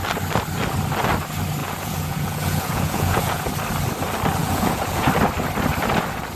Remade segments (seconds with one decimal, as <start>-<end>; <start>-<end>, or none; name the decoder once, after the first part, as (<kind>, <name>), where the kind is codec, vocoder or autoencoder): 1.6-3.5 (vocoder, Vocos); 4.4-5.1